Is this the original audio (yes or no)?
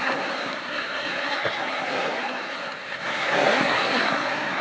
no